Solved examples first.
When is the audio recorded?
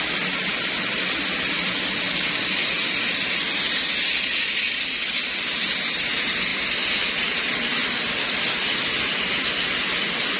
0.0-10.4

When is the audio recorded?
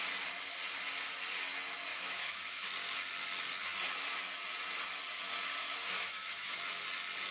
0.0-1.9; 2.7-5.6; 6.6-7.3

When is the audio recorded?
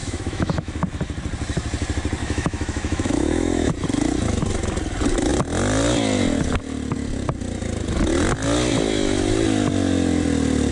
0.8-2.2; 3.7-10.7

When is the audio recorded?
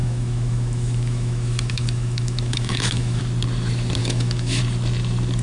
3.2-4.0; 4.6-5.4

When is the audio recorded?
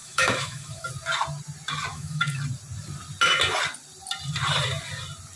0.9-1.9; 2.4-5.4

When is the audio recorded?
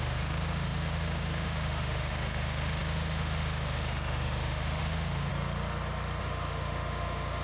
5.3-6.2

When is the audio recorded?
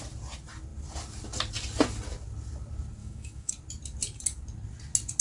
0.0-3.0; 3.5-5.2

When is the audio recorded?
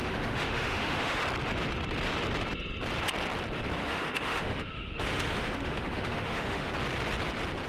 1.2-3.8; 6.7-7.7